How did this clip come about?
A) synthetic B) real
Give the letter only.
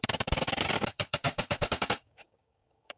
A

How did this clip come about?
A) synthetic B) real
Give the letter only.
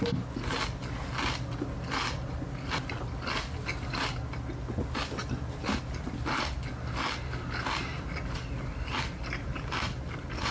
B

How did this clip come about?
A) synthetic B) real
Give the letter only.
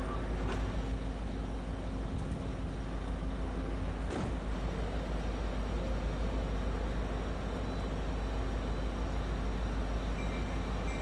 B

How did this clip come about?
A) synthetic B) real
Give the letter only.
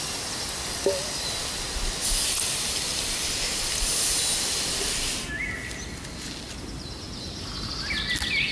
B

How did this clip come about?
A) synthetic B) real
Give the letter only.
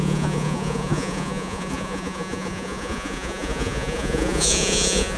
A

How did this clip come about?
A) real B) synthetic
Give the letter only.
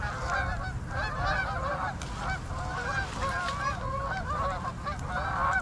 A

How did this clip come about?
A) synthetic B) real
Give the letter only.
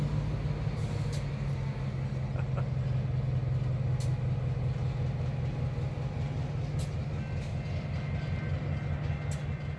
B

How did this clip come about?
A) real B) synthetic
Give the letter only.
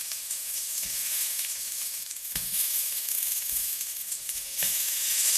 B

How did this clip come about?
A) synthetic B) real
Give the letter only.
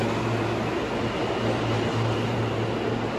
B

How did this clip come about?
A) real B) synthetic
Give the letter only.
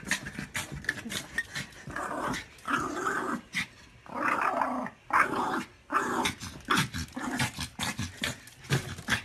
A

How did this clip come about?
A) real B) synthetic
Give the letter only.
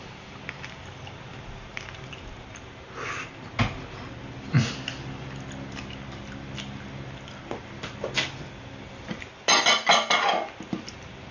A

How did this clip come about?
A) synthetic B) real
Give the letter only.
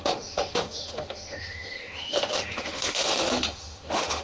A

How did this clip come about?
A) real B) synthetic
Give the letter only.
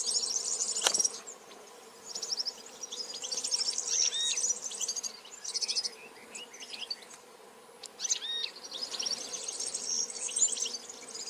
A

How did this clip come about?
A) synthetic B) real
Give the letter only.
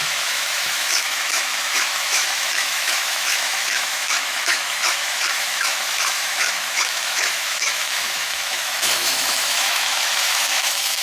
A